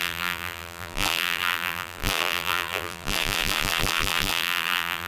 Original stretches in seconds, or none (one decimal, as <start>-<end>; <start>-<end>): none